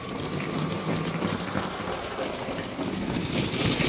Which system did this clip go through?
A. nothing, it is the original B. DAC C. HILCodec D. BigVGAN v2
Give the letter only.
D